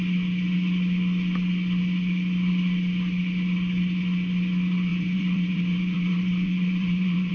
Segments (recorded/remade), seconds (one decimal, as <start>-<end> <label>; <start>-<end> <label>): 0.0-4.9 recorded; 4.9-7.3 remade